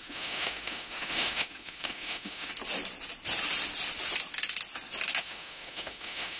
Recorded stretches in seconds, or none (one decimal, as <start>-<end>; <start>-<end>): 2.5-5.2